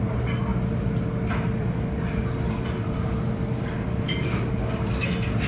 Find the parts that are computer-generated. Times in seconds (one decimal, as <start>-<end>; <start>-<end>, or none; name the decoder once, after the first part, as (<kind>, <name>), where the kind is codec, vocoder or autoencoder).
none